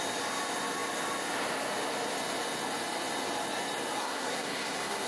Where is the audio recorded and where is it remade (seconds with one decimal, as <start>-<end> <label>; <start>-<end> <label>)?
0.0-4.0 recorded; 4.0-5.1 remade